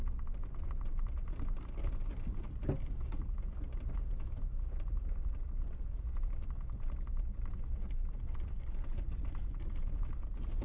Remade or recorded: recorded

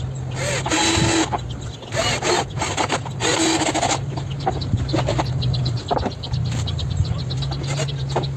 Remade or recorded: recorded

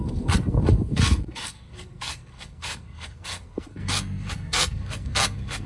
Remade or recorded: remade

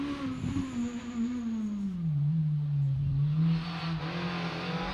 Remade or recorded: recorded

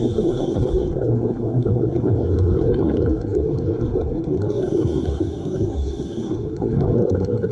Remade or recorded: remade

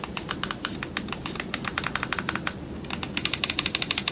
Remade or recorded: recorded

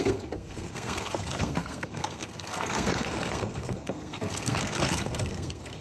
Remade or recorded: remade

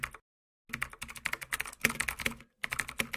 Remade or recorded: recorded